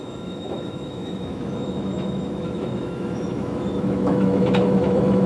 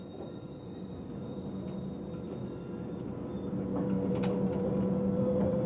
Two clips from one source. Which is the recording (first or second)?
second